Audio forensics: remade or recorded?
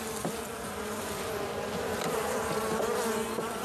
recorded